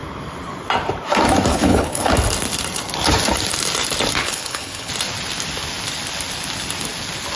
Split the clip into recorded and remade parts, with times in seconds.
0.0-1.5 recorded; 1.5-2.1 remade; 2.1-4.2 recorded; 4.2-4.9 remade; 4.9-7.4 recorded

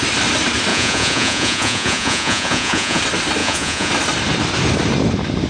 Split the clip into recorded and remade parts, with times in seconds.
0.0-0.7 recorded; 0.7-3.0 remade; 3.0-3.4 recorded; 3.4-3.9 remade; 3.9-5.5 recorded

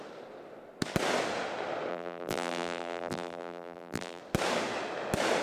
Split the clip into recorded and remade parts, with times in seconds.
0.0-1.9 recorded; 1.9-4.2 remade; 4.2-5.4 recorded

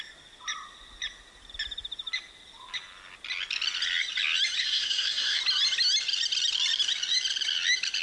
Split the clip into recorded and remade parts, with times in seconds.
0.0-4.6 recorded; 4.6-5.4 remade; 5.4-8.0 recorded

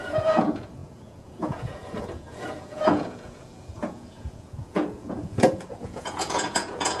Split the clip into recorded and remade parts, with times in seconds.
0.0-7.0 remade